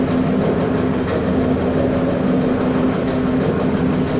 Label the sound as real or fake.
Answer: real